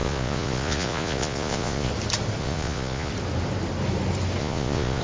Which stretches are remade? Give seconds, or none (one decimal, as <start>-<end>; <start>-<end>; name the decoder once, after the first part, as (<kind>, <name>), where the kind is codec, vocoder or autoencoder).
0.0-1.9 (vocoder, Vocos); 2.4-3.1; 4.4-5.0